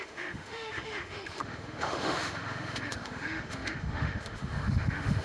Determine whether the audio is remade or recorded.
remade